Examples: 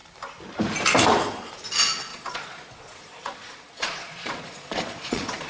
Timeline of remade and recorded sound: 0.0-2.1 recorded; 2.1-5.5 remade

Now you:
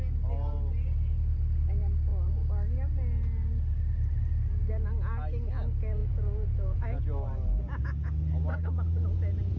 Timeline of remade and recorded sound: 0.0-6.0 recorded; 6.0-7.0 remade; 7.0-9.6 recorded

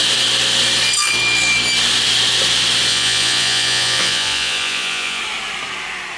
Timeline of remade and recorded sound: 0.0-2.9 recorded; 2.9-5.2 remade; 5.2-6.2 recorded